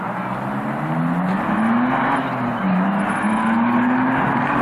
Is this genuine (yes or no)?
yes